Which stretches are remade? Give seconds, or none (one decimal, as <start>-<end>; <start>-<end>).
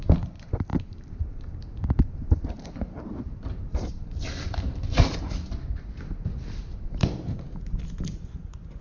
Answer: 0.7-5.9; 6.7-7.4